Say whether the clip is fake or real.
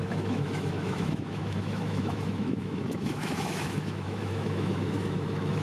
fake